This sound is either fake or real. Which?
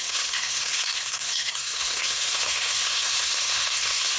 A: fake